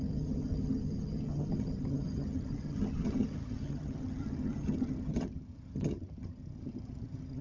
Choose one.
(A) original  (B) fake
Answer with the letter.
B